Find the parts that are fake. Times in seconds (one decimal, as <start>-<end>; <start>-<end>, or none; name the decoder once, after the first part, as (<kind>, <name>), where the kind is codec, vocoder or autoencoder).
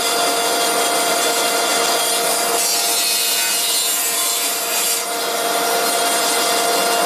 4.0-4.6 (vocoder, BigVGAN v2)